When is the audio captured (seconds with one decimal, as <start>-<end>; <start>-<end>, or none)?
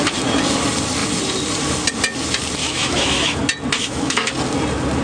0.0-2.6; 3.4-3.8; 4.3-5.0